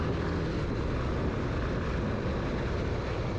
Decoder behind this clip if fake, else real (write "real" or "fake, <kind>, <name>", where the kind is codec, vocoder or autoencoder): real